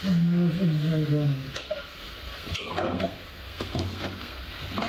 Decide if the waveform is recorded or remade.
remade